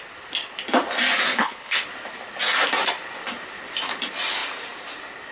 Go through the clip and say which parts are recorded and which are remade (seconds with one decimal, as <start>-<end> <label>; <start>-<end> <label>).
0.0-1.3 recorded; 1.3-1.8 remade; 1.8-5.3 recorded

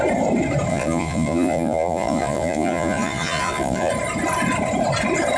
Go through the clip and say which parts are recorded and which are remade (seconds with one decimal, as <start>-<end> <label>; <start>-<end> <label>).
0.0-0.7 recorded; 0.7-3.9 remade; 3.9-5.4 recorded

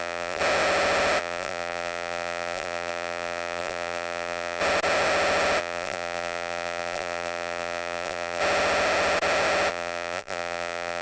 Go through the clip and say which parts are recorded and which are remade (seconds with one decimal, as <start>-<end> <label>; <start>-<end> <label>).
0.0-0.4 remade; 0.4-1.2 recorded; 1.2-4.6 remade; 4.6-5.6 recorded; 5.6-8.4 remade; 8.4-9.7 recorded; 9.7-11.0 remade

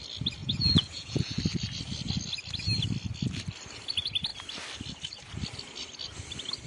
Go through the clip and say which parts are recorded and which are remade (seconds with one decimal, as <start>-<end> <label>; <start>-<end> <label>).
0.0-0.4 recorded; 0.4-1.4 remade; 1.4-6.7 recorded